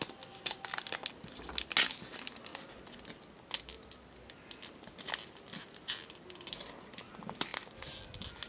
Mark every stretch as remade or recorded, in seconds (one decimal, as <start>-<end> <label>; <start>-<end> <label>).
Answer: 0.0-8.5 recorded